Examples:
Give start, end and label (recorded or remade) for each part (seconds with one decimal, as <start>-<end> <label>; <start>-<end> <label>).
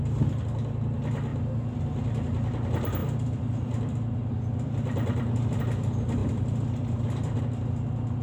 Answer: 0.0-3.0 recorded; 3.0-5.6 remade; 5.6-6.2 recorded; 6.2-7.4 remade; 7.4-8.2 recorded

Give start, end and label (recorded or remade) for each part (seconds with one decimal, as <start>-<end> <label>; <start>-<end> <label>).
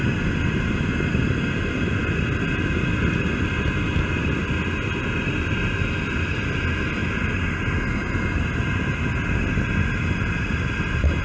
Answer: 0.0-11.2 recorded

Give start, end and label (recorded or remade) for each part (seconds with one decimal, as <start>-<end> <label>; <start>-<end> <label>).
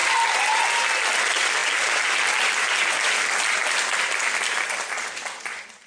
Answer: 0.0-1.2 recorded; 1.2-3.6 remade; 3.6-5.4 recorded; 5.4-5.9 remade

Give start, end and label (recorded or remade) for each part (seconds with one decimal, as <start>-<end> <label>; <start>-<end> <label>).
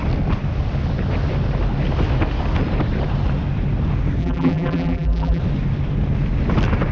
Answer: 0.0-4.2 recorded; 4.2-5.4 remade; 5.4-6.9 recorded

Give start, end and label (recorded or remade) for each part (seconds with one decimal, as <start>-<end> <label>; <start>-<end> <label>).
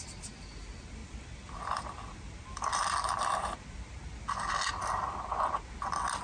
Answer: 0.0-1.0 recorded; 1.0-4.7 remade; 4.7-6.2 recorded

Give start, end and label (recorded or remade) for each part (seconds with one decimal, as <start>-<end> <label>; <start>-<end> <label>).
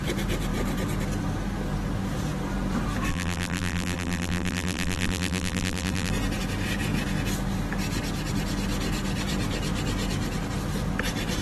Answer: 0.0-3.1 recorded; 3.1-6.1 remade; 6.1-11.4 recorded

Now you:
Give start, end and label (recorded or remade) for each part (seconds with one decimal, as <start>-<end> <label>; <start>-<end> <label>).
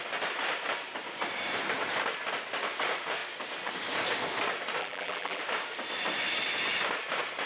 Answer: 0.0-4.8 recorded; 4.8-5.4 remade; 5.4-7.5 recorded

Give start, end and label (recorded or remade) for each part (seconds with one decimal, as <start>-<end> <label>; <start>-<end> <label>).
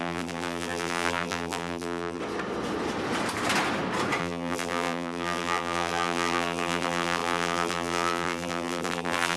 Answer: 0.0-2.2 remade; 2.2-4.2 recorded; 4.2-9.4 remade